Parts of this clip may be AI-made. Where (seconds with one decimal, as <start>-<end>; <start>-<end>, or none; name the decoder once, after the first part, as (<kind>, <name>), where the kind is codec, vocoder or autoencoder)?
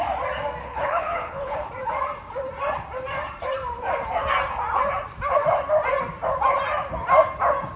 0.6-1.7 (codec, HILCodec)